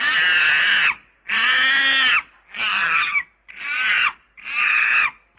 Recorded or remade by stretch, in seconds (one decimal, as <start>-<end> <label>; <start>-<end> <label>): 0.0-2.7 recorded; 2.7-4.9 remade; 4.9-5.4 recorded